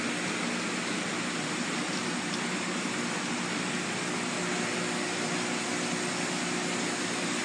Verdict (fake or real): real